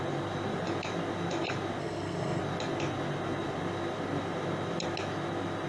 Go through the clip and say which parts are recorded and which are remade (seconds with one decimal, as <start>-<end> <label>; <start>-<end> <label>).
0.0-1.8 recorded; 1.8-2.4 remade; 2.4-5.7 recorded